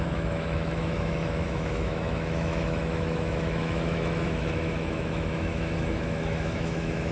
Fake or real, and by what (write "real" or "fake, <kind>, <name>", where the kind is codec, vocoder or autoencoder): fake, autoencoder, DAC-VAE